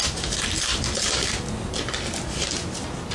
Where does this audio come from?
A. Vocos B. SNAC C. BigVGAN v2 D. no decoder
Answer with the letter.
D